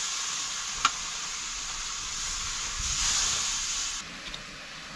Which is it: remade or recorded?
recorded